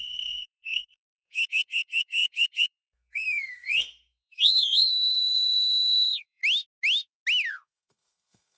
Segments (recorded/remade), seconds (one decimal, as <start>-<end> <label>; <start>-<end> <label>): 0.0-6.4 remade; 6.4-7.5 recorded; 7.5-8.6 remade